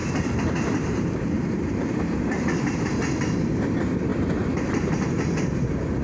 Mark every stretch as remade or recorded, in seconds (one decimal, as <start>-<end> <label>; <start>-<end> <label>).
0.0-3.6 remade; 3.6-4.1 recorded; 4.1-5.6 remade; 5.6-6.0 recorded